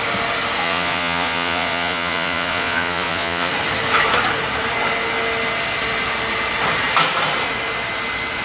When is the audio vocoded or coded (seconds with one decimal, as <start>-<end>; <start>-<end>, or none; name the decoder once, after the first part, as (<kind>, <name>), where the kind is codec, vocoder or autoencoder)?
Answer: 0.6-3.5 (vocoder, Vocos)